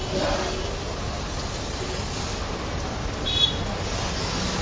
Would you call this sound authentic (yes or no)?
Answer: yes